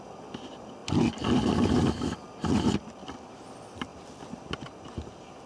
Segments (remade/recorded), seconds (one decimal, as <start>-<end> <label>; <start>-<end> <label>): 0.0-5.5 recorded